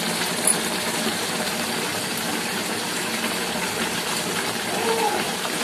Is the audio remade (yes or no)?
yes